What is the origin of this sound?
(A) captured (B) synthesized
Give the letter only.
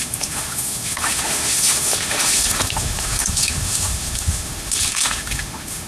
B